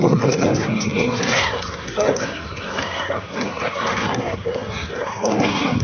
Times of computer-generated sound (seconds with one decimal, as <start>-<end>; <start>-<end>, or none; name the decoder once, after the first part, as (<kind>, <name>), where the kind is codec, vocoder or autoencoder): 0.0-5.8 (codec, SNAC)